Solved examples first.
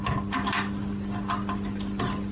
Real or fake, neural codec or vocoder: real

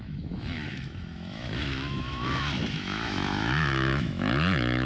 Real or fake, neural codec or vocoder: fake, autoencoder, DAC-VAE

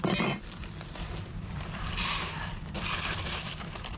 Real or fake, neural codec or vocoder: fake, vocoder, BigVGAN v2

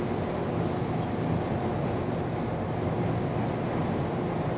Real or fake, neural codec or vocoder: real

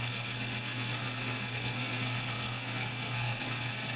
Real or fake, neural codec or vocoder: fake, codec, SNAC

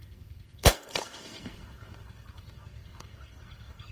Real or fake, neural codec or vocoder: fake, codec, SNAC